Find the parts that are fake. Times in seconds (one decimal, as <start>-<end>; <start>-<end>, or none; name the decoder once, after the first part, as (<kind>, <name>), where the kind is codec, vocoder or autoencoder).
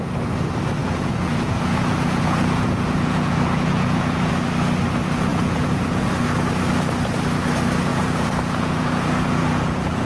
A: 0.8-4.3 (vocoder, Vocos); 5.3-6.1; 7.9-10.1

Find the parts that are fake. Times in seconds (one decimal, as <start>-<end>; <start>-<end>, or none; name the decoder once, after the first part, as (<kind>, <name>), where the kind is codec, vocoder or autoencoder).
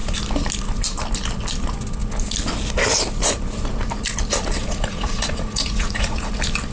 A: 4.6-6.3 (vocoder, Vocos)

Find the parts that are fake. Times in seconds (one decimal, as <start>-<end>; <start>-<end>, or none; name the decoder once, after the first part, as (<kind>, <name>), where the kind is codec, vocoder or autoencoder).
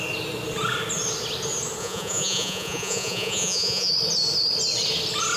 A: 1.8-3.9 (vocoder, Vocos)